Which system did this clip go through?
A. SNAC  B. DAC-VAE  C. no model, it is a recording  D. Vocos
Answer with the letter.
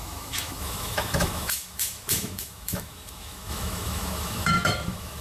B